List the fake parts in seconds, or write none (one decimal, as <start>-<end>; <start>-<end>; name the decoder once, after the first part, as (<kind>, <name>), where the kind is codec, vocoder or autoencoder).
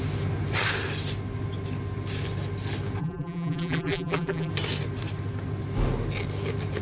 3.0-4.5 (vocoder, BigVGAN v2)